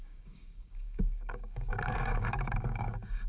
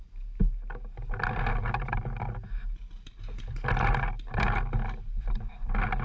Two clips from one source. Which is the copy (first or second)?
first